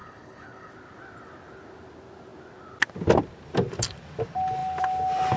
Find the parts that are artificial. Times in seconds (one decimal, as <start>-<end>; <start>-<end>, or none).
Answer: 0.0-0.7